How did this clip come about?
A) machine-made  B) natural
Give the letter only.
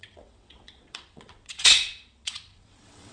A